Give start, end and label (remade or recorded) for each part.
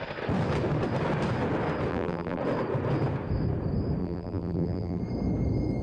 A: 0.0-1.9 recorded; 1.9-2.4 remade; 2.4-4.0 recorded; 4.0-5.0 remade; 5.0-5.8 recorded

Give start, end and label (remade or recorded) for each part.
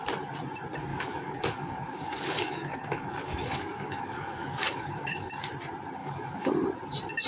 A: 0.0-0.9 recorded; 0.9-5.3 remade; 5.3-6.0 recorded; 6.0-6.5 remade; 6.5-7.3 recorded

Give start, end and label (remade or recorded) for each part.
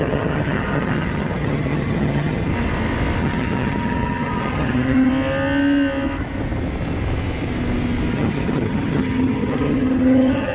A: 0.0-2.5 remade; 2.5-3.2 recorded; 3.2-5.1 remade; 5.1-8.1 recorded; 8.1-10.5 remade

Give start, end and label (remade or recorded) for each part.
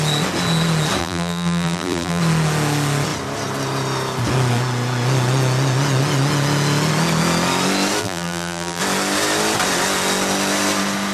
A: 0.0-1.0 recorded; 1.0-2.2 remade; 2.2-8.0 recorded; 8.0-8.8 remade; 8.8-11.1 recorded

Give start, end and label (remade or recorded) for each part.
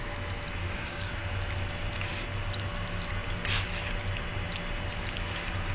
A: 0.0-0.6 recorded; 0.6-1.1 remade; 1.1-5.7 recorded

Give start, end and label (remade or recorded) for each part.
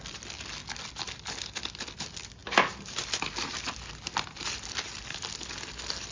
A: 0.0-6.1 recorded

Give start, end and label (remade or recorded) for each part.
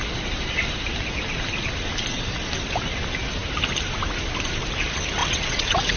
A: 0.0-5.2 recorded; 5.2-6.0 remade